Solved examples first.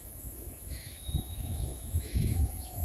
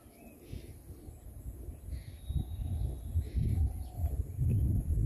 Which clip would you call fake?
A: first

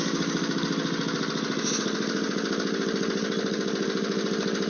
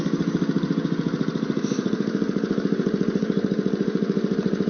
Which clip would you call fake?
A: second